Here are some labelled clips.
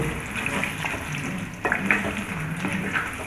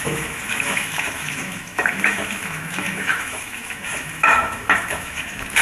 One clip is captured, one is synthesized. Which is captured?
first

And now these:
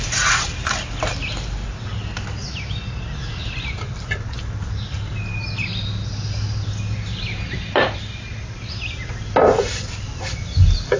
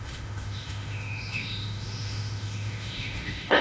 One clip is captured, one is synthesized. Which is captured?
first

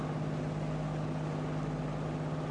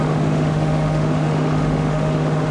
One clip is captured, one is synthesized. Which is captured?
first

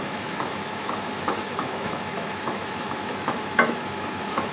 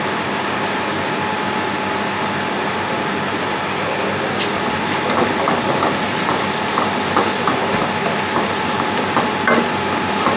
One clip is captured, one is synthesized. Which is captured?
second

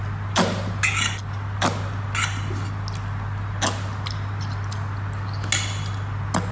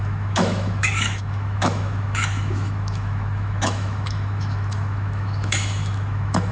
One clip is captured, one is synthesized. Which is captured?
first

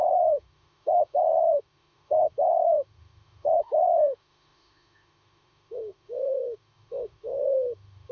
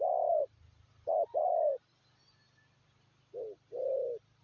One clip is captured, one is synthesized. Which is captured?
second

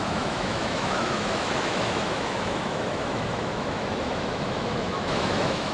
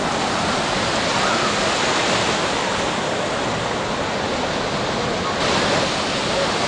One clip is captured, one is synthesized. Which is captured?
second